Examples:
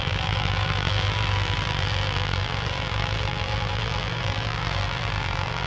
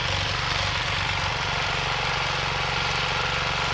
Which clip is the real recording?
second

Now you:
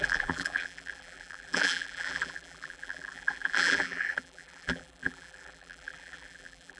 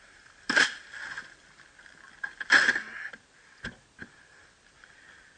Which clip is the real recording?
second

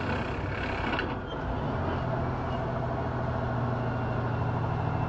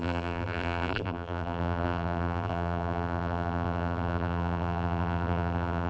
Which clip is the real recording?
first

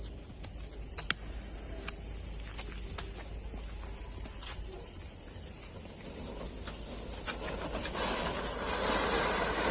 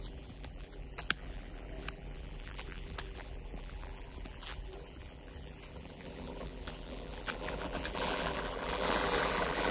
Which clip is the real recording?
first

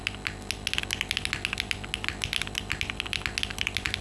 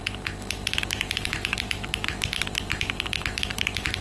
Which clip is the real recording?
first